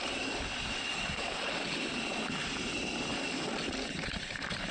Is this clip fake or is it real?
fake